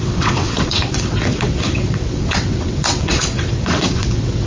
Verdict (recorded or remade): remade